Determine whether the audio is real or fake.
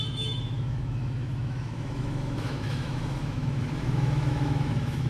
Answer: fake